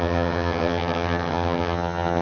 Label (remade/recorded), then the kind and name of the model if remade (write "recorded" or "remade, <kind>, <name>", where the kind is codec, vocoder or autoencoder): remade, vocoder, HiFi-GAN